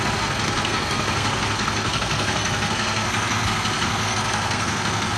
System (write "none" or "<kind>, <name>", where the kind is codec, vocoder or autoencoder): codec, SNAC